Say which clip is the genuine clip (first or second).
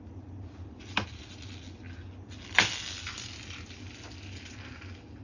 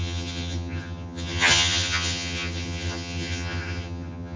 first